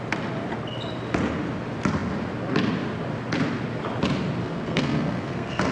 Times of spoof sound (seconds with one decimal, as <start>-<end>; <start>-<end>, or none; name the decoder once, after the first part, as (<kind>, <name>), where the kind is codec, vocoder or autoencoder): 4.4-5.7 (codec, SNAC)